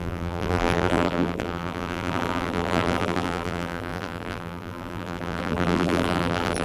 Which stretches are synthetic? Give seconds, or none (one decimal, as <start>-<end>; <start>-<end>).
0.0-6.6